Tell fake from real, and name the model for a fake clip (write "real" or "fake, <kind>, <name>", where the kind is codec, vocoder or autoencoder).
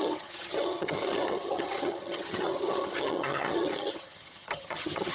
fake, vocoder, HiFi-GAN